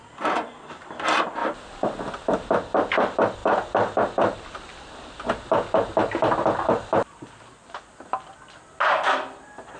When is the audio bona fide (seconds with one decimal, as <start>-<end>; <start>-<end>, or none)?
0.0-1.4; 2.5-3.4; 8.3-9.8